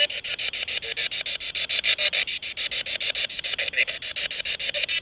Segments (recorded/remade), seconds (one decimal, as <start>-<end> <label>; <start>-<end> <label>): 0.0-5.0 recorded